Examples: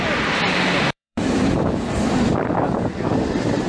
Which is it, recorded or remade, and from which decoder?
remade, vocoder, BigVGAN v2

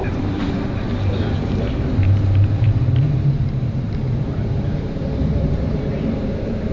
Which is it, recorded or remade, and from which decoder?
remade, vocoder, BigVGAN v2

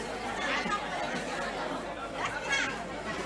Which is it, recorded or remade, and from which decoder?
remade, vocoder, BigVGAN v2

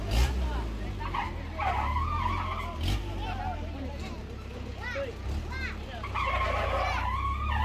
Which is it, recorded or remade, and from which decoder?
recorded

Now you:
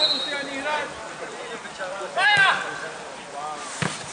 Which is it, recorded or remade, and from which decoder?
recorded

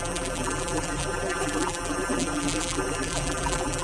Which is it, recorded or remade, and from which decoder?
remade, vocoder, BigVGAN v2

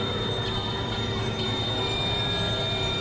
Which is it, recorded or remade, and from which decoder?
remade, vocoder, BigVGAN v2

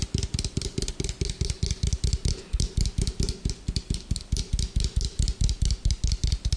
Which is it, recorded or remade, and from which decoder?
recorded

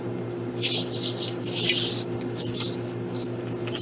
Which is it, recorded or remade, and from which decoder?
recorded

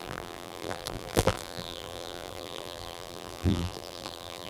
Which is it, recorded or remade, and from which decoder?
remade, vocoder, BigVGAN v2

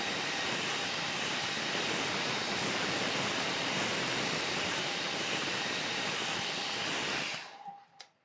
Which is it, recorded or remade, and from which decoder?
remade, vocoder, BigVGAN v2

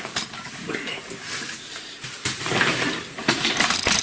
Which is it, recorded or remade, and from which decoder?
recorded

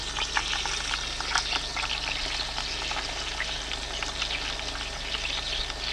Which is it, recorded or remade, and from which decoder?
recorded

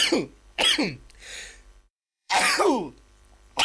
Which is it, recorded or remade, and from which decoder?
remade, vocoder, BigVGAN v2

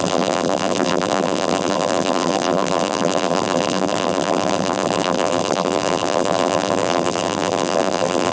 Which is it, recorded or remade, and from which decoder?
remade, vocoder, BigVGAN v2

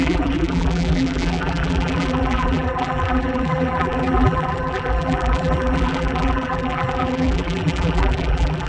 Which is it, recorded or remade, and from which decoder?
remade, vocoder, BigVGAN v2